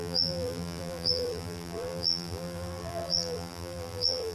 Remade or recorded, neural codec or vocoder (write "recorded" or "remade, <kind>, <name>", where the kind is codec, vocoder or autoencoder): remade, vocoder, BigVGAN v2